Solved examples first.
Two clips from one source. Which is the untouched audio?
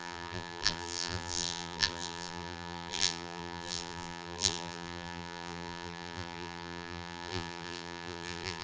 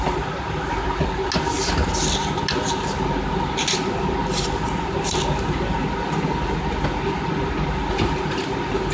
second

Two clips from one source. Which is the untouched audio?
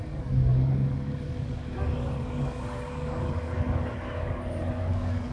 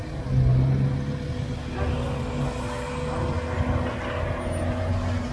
second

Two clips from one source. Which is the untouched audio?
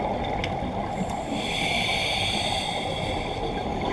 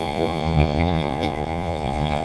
first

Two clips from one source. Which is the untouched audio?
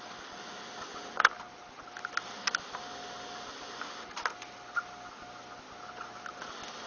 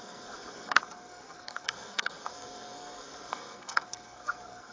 first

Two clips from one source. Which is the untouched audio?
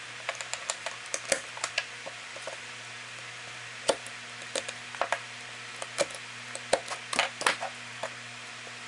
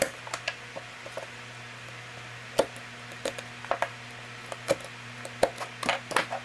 second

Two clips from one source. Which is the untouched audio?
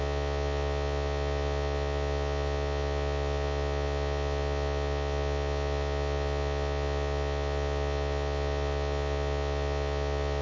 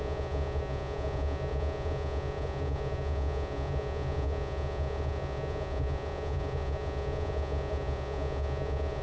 first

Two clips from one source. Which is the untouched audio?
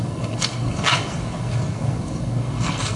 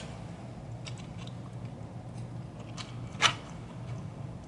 second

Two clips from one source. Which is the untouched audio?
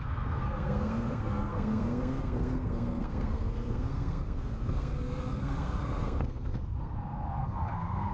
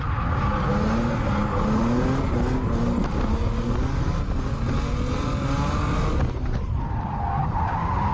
second